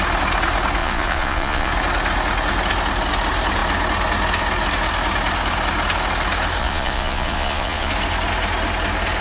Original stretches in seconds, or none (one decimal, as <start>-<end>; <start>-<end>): 0.0-0.8; 1.7-6.6; 7.9-9.2